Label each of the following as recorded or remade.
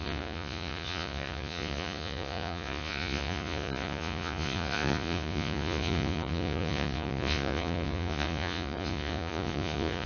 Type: remade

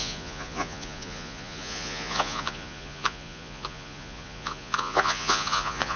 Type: remade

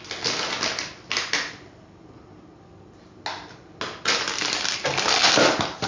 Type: recorded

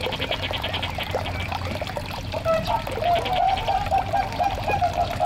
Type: recorded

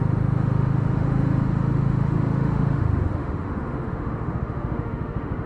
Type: remade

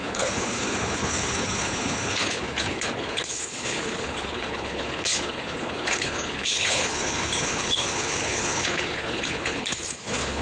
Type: remade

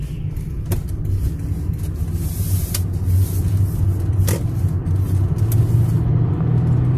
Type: recorded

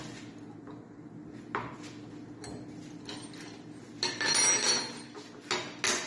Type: recorded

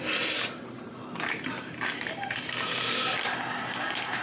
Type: recorded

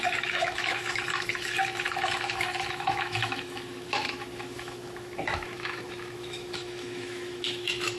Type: remade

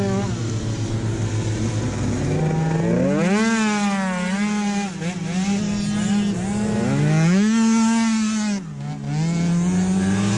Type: recorded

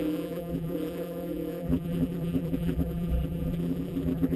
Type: remade